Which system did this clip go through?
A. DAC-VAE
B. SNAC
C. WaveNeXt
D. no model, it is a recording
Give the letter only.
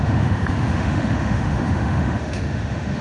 A